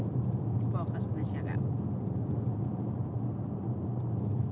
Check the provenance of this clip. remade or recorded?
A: recorded